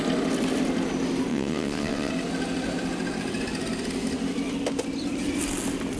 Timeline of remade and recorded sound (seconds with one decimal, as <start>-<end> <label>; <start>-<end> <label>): 0.0-1.3 recorded; 1.3-2.1 remade; 2.1-6.0 recorded

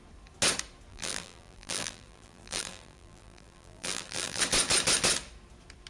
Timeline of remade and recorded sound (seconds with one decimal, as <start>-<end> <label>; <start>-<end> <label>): 0.0-0.9 recorded; 0.9-4.4 remade; 4.4-5.9 recorded

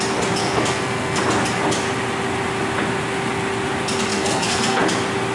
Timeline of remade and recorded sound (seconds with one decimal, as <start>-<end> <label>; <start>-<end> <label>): 0.0-0.4 recorded; 0.4-1.2 remade; 1.2-4.1 recorded; 4.1-4.8 remade; 4.8-5.3 recorded

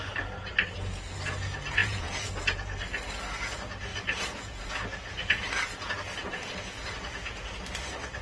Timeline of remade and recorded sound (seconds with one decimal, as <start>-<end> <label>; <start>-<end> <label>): 0.0-1.8 recorded; 1.8-2.8 remade; 2.8-3.9 recorded; 3.9-5.4 remade; 5.4-6.2 recorded; 6.2-7.5 remade; 7.5-8.2 recorded

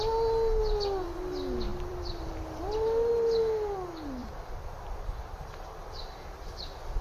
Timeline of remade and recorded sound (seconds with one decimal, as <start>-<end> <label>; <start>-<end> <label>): 0.0-1.7 recorded; 1.7-2.3 remade; 2.3-4.2 recorded; 4.2-6.6 remade; 6.6-7.0 recorded

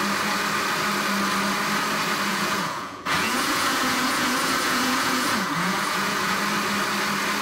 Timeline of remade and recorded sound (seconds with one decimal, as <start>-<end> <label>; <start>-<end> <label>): 0.0-2.3 recorded; 2.3-6.4 remade; 6.4-7.4 recorded

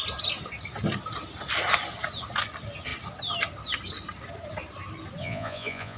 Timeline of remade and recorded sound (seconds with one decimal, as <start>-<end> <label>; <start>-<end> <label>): 0.0-5.2 recorded; 5.2-6.0 remade